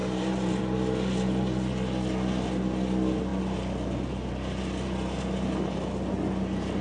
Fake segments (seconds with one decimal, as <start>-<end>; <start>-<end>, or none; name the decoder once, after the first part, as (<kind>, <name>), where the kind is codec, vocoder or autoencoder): 0.0-0.6 (vocoder, BigVGAN v2)